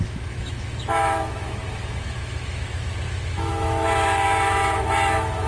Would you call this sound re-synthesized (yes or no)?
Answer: yes